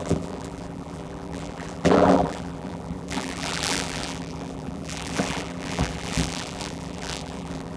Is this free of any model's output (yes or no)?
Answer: no